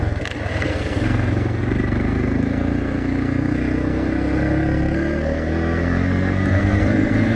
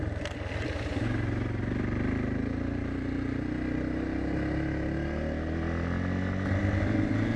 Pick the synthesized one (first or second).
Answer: first